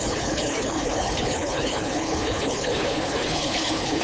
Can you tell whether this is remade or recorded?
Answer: remade